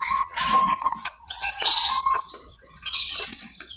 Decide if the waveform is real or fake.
fake